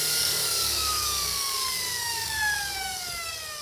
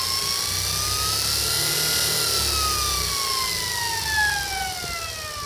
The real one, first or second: second